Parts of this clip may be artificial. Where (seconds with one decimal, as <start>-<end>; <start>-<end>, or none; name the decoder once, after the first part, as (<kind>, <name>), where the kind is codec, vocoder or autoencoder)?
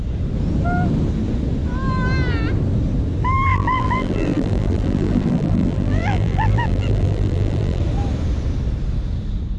3.5-7.8 (vocoder, BigVGAN v2)